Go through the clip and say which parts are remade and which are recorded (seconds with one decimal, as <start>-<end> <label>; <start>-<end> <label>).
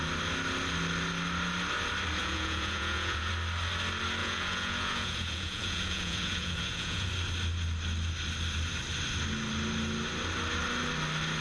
0.0-2.2 recorded; 2.2-3.3 remade; 3.3-4.2 recorded; 4.2-7.1 remade; 7.1-11.4 recorded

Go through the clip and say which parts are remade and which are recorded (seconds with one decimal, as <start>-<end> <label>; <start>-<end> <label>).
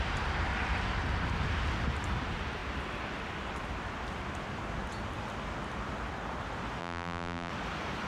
0.0-6.8 recorded; 6.8-7.5 remade; 7.5-8.1 recorded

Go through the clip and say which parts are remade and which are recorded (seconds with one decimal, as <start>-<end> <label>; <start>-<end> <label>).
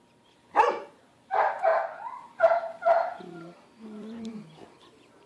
0.0-3.1 remade; 3.1-3.8 recorded; 3.8-5.3 remade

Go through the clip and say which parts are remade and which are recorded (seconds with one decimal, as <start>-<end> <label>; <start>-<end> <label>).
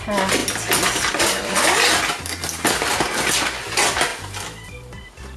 0.0-5.4 recorded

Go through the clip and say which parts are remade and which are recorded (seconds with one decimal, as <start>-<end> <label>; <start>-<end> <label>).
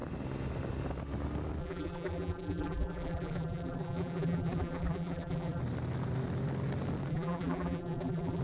0.0-1.6 recorded; 1.6-5.6 remade; 5.6-7.1 recorded; 7.1-8.4 remade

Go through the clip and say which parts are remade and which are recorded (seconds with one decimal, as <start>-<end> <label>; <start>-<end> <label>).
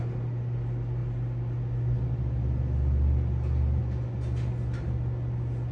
0.0-5.7 recorded